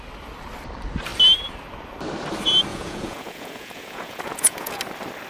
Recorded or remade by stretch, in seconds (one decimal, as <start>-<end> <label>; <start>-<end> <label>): 0.0-2.7 recorded; 2.7-4.8 remade; 4.8-5.3 recorded